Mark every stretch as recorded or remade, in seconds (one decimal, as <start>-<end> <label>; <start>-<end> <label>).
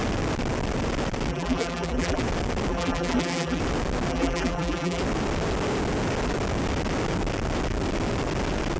0.0-1.3 recorded; 1.3-2.2 remade; 2.2-2.7 recorded; 2.7-3.6 remade; 3.6-4.1 recorded; 4.1-5.0 remade; 5.0-8.8 recorded